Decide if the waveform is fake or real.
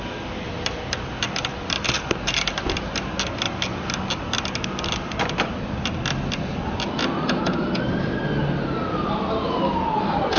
real